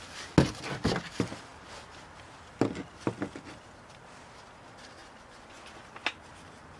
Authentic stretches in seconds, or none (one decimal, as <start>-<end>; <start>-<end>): 0.0-5.0; 5.6-6.8